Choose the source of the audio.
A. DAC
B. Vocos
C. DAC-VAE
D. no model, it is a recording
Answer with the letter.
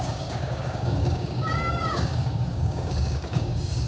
A